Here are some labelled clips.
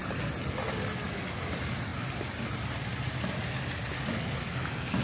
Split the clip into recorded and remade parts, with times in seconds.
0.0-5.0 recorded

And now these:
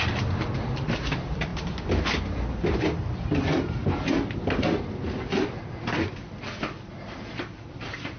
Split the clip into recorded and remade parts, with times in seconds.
0.0-8.2 recorded

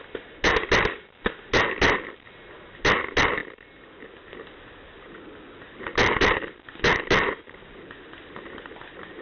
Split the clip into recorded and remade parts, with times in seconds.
0.0-9.2 recorded

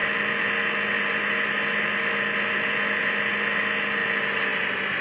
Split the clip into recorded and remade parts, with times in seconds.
0.0-5.0 recorded